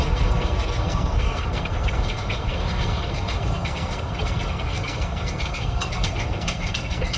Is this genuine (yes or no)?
no